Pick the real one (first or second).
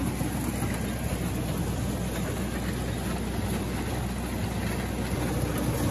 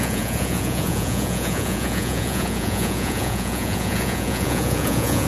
first